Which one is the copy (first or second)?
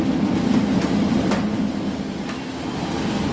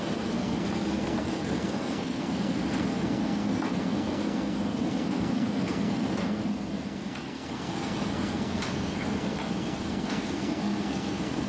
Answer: second